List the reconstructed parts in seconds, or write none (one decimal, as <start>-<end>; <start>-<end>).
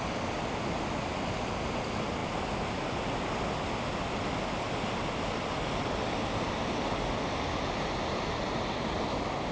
none